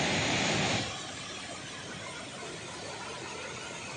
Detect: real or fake real